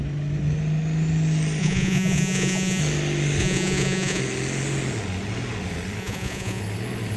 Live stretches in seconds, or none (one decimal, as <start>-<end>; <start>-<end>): 0.0-1.6; 2.8-3.4; 4.2-6.0; 6.6-7.2